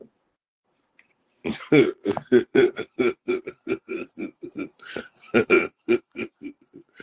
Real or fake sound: fake